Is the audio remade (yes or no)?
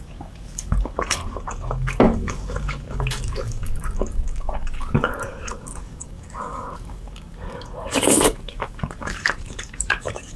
yes